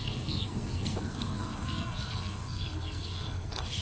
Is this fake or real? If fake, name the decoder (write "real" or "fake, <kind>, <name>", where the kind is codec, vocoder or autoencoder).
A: fake, codec, SNAC